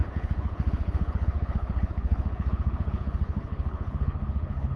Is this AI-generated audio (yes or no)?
yes